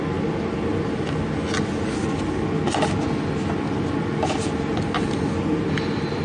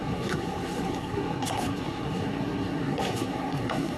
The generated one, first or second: second